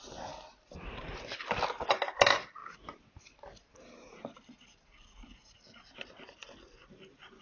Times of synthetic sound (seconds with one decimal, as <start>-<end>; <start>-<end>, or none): none